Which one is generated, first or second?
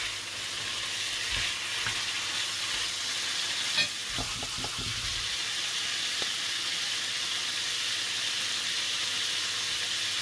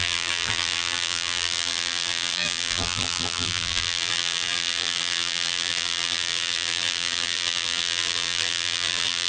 second